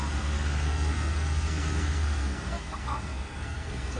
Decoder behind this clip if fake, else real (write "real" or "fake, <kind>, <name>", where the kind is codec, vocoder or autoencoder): fake, codec, SNAC